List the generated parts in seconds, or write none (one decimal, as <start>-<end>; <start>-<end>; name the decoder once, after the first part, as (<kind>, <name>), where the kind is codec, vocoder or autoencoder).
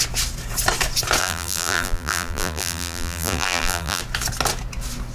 1.2-4.0 (vocoder, BigVGAN v2)